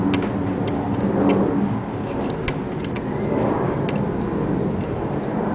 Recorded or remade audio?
recorded